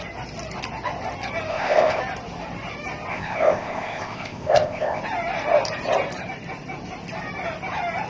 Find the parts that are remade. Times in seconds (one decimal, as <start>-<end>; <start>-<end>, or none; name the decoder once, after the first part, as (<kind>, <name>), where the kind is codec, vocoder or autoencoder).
1.5-2.0 (codec, ZipCodec); 3.1-5.0

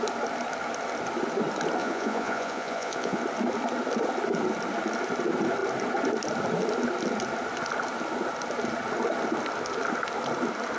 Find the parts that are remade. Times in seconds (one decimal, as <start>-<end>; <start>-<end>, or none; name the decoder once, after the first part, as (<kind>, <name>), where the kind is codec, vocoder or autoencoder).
1.8-3.2 (vocoder, Vocos)

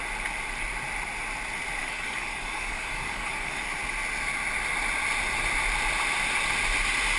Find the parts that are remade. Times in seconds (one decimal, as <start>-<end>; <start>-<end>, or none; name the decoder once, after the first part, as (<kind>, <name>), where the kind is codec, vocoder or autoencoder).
1.8-3.7 (codec, DAC)

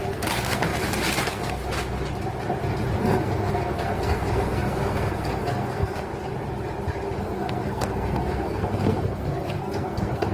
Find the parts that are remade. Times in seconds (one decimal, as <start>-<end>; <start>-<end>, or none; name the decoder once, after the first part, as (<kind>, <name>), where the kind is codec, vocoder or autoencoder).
0.0-0.7 (codec, SNAC); 1.2-1.6; 3.0-6.1; 7.2-10.3

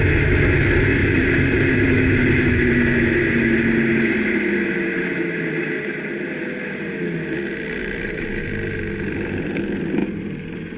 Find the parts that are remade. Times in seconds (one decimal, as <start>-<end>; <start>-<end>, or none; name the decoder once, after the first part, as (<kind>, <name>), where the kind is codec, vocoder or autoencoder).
1.0-2.4 (vocoder, BigVGAN v2); 7.8-8.5; 10.0-10.8